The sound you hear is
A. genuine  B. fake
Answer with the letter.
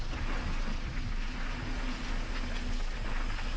A